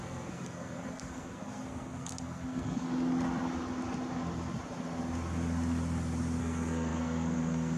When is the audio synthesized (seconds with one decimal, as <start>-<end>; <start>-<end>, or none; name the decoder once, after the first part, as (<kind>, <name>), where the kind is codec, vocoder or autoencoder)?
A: 0.0-2.9 (codec, SNAC); 6.4-7.8